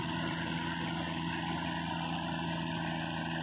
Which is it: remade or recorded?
recorded